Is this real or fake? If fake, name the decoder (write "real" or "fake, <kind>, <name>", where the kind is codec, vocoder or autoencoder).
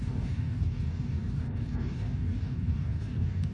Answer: fake, codec, DAC